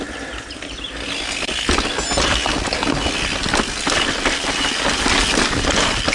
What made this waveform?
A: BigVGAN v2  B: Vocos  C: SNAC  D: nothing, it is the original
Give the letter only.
D